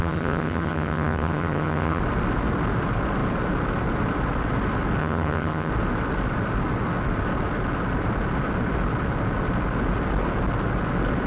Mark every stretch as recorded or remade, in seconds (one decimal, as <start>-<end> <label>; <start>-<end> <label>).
0.0-2.0 remade; 2.0-5.0 recorded; 5.0-5.7 remade; 5.7-11.3 recorded